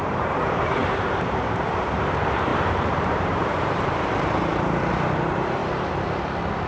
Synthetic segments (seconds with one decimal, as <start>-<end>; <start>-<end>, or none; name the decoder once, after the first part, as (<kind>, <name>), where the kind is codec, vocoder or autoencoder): 0.0-5.6 (vocoder, BigVGAN v2)